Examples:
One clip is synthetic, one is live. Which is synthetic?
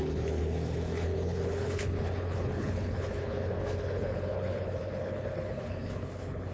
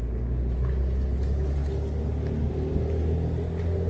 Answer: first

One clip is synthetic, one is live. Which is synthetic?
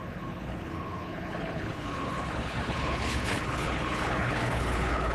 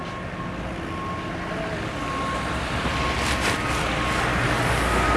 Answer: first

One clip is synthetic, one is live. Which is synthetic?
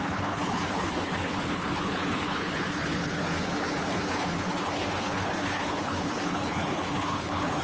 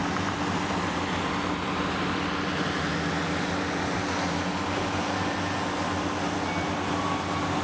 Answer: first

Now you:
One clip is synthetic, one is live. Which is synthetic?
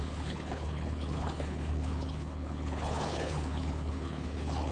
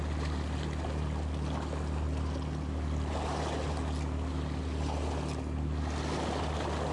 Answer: first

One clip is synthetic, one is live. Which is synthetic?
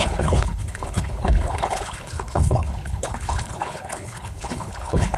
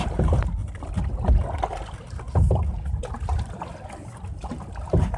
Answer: first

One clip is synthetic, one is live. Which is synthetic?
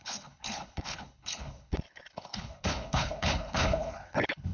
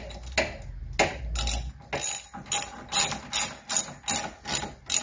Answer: first